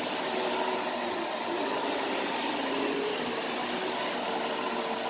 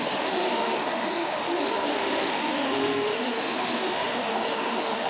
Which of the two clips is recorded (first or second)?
first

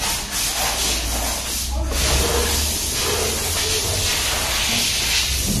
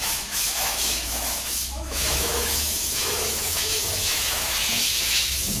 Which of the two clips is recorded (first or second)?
first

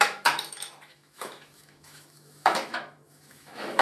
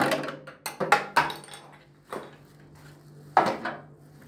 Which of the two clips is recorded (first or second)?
second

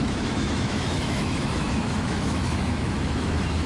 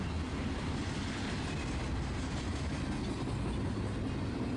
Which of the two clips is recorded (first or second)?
second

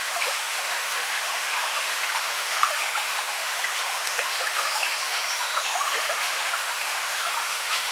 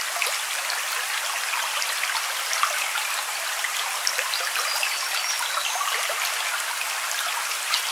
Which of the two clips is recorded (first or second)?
second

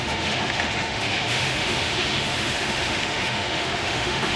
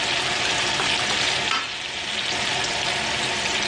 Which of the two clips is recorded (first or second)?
second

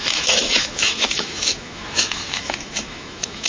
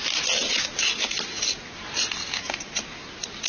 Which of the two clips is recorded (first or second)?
second